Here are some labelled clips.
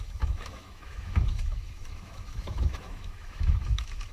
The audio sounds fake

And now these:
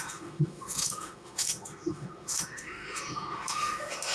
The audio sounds fake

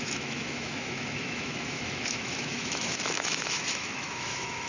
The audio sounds fake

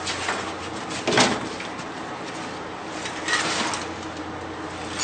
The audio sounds real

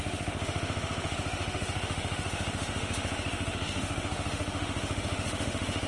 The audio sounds fake